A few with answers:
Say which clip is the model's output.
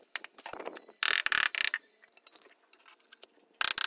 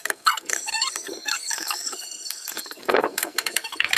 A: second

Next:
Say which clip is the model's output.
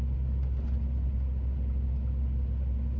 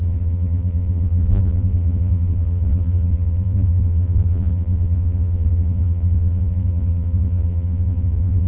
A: second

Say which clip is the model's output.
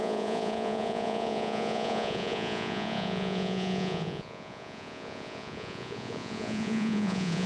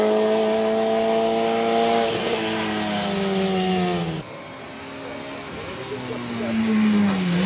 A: first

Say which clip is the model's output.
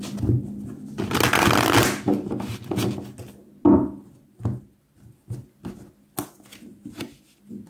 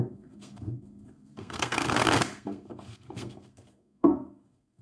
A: second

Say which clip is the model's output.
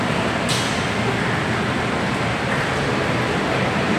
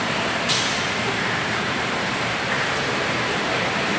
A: second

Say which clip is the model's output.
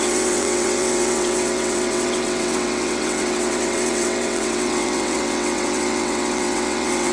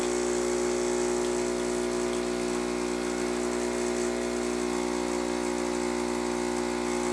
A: first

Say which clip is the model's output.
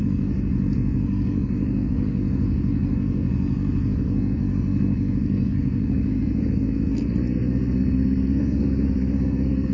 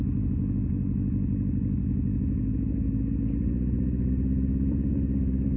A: first